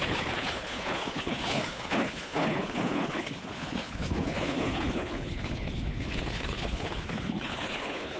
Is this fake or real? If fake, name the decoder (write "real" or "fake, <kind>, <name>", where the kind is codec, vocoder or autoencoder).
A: fake, codec, HILCodec